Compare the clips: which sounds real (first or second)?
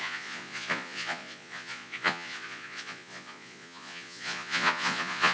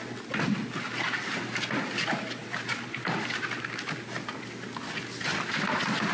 second